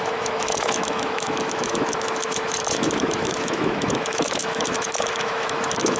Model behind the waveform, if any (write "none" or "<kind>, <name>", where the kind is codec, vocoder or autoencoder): autoencoder, DAC-VAE